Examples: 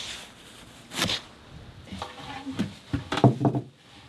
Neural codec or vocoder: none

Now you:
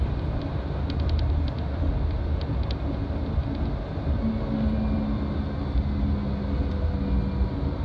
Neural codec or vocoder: none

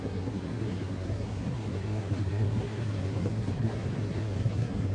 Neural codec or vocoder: codec, SNAC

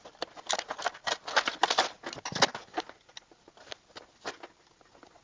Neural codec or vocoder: none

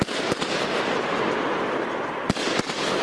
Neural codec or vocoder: none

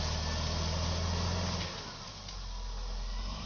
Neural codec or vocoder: none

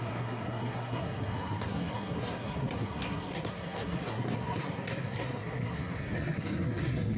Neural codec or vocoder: codec, SNAC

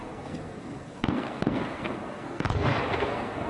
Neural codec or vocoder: codec, SNAC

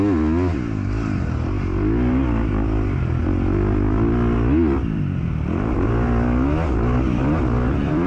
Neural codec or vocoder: none